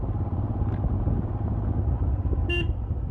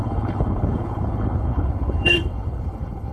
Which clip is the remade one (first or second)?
second